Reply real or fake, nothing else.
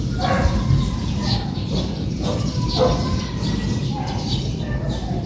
real